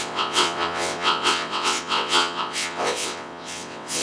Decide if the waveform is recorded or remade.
remade